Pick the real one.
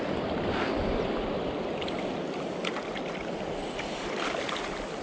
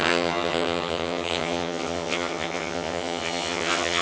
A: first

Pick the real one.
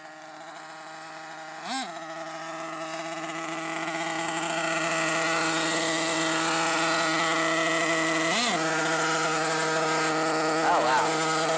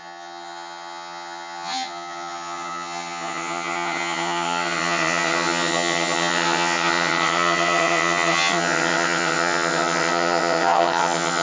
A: first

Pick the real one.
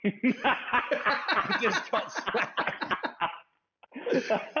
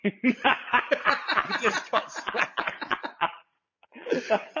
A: first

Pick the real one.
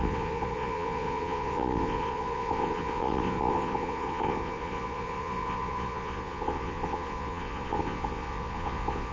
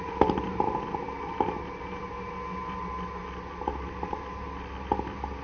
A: second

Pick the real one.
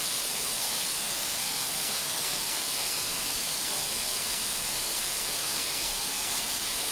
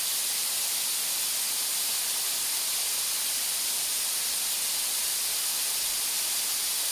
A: second